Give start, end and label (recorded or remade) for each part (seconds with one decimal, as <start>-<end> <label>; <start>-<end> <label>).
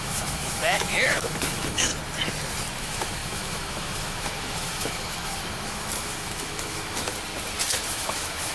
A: 0.0-1.9 remade; 1.9-2.8 recorded; 2.8-7.1 remade; 7.1-7.9 recorded; 7.9-8.5 remade